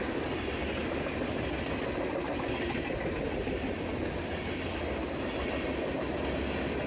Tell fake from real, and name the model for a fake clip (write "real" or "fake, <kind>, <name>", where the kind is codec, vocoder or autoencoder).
real